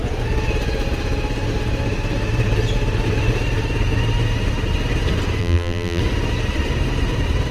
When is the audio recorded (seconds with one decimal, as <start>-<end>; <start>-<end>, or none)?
0.0-5.4; 6.0-7.5